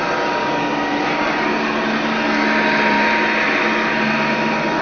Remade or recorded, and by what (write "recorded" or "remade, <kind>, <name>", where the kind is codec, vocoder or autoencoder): recorded